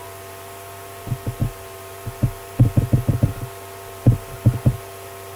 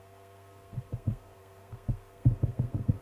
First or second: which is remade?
second